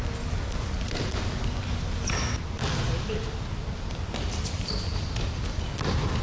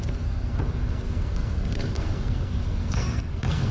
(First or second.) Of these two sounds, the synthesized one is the second